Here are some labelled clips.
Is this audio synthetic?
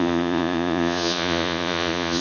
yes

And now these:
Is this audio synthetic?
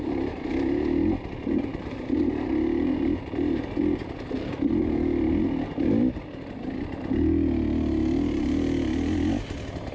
no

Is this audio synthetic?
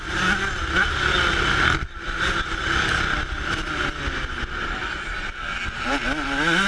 no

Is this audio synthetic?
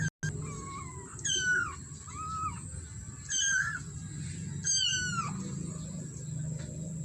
no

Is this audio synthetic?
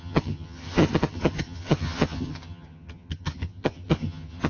yes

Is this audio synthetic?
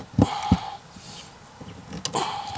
no